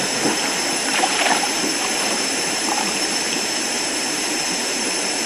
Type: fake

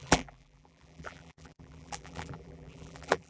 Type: fake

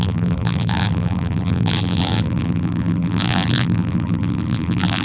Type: fake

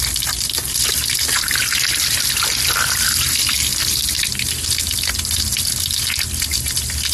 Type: real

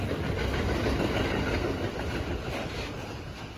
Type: real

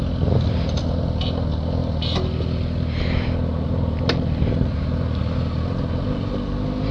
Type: real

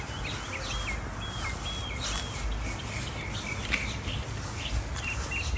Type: real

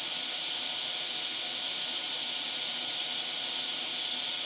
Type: real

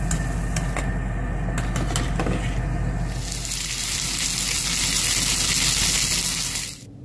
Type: real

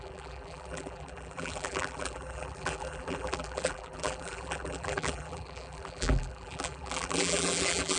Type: fake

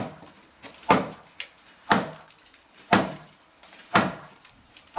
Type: fake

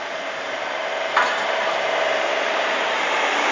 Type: fake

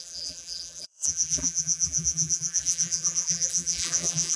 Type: fake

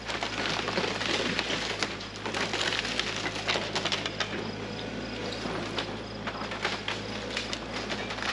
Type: real